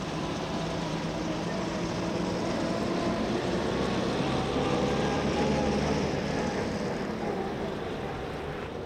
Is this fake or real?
fake